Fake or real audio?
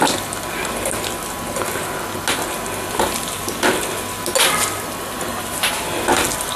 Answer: real